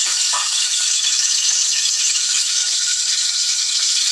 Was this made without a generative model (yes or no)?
no